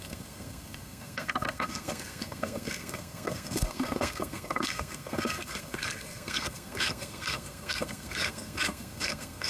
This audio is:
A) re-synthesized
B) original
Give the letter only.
A